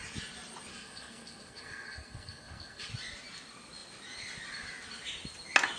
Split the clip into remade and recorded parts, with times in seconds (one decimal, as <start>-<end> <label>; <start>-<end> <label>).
0.0-0.7 recorded; 0.7-2.9 remade; 2.9-5.8 recorded